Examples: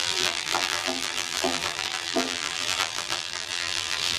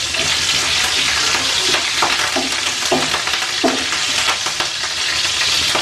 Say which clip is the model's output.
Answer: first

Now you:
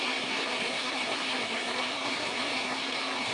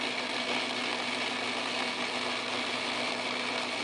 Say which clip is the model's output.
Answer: first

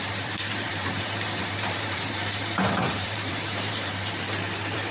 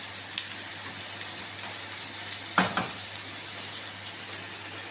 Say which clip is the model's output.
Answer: first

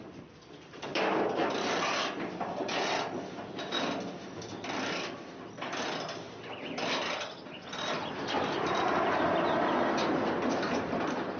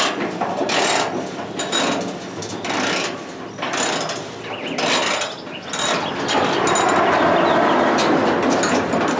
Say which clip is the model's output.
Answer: first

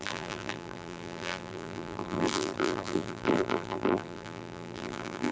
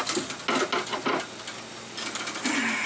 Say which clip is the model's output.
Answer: first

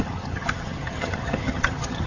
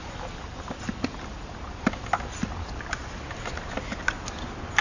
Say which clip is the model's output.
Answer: first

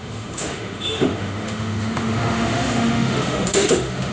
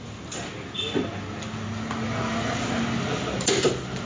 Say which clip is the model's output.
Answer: first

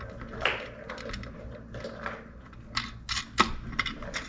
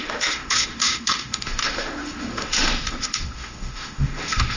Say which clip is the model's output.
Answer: second